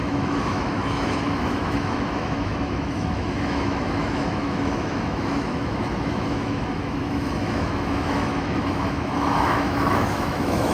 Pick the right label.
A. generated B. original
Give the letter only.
A